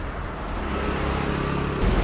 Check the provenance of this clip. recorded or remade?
recorded